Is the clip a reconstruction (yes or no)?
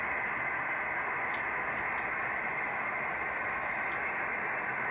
no